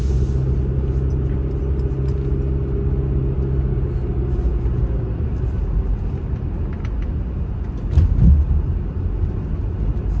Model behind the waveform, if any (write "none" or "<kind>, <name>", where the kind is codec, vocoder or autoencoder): none